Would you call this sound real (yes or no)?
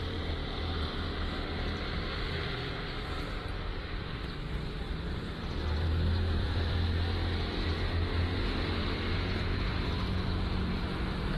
no